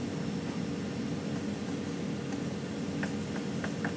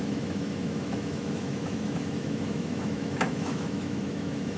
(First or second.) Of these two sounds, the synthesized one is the second